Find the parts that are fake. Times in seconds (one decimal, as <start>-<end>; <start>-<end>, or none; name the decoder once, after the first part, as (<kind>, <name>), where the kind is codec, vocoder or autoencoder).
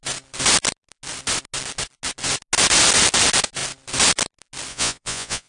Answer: 4.7-5.5 (vocoder, Vocos)